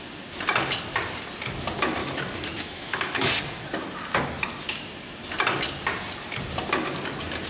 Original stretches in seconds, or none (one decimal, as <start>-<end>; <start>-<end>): 0.0-2.0; 3.3-7.5